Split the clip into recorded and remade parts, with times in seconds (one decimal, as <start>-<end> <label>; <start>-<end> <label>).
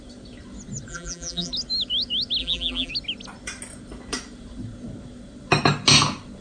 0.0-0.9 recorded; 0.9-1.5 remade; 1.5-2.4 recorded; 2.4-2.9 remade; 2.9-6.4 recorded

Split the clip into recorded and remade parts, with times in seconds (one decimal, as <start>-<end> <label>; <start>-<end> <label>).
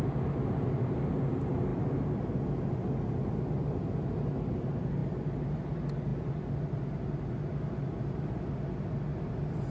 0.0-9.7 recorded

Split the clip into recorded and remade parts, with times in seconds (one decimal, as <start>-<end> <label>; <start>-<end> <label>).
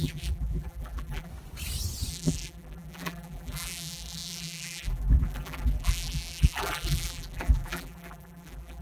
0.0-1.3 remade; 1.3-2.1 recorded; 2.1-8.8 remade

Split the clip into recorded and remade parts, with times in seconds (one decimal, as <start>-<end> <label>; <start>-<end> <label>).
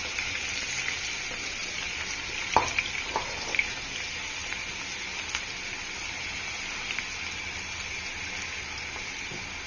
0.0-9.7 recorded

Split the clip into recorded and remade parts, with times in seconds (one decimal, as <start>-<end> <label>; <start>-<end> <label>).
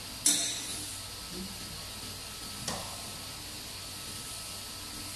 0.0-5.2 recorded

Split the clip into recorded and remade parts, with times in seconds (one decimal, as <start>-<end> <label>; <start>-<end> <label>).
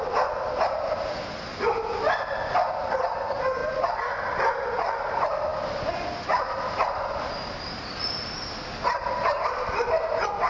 0.0-3.6 recorded; 3.6-5.0 remade; 5.0-10.5 recorded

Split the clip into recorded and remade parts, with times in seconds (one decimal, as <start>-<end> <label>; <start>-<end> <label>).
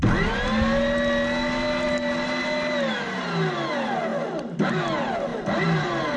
0.0-4.1 recorded; 4.1-4.7 remade; 4.7-5.3 recorded; 5.3-6.2 remade